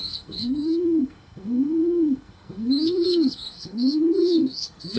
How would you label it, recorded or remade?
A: remade